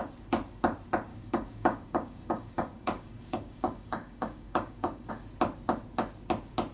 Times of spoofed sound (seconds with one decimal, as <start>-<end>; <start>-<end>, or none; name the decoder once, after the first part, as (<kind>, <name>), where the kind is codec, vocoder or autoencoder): 1.1-5.1 (codec, DAC)